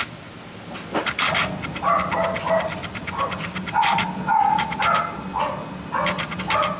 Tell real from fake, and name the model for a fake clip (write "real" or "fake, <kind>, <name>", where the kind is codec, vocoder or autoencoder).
real